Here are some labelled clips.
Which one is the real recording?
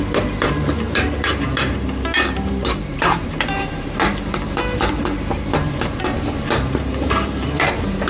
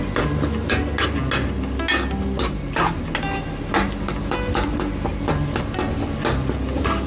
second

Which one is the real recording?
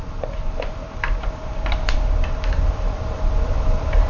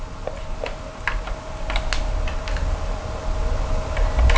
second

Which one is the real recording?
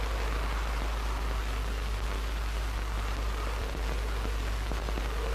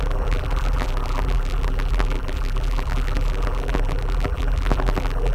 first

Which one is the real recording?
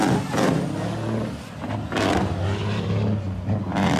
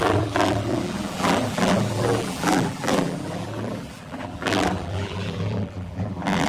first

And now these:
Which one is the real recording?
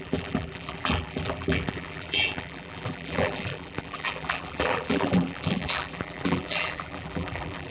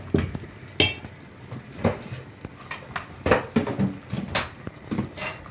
second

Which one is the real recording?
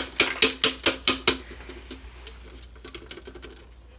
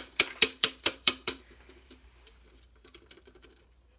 first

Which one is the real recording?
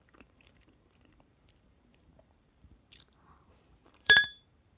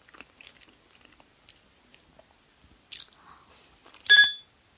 second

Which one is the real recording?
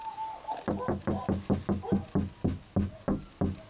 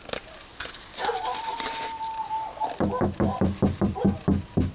first